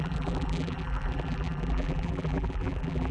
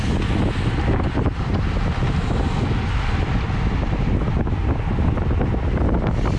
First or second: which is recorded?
second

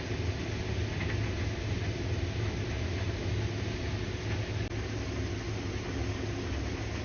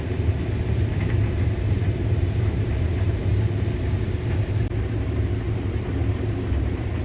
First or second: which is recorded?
first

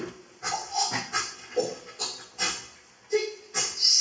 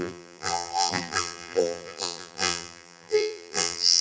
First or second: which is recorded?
first